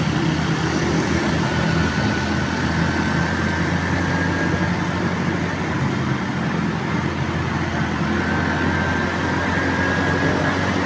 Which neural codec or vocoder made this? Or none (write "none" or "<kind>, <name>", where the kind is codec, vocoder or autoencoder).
none